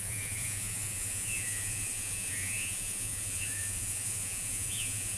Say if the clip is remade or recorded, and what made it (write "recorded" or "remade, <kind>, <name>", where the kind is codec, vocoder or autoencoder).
remade, vocoder, Vocos